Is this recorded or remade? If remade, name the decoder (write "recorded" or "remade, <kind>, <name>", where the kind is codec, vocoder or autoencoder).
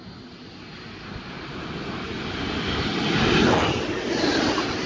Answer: recorded